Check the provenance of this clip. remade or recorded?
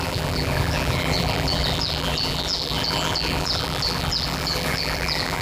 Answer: remade